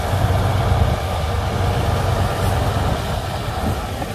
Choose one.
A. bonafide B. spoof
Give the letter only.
A